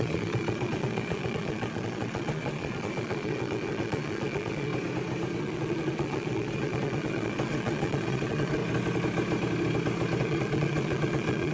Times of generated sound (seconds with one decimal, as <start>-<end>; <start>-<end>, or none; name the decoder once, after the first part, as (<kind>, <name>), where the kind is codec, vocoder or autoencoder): 0.0-4.7 (vocoder, Vocos); 5.4-8.6; 10.2-11.5